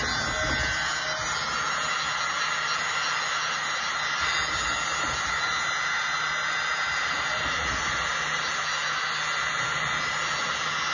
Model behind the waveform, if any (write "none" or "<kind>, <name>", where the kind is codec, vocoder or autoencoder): none